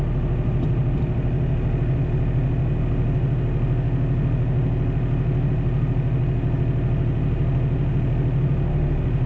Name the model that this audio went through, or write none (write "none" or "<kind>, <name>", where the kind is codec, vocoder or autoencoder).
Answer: none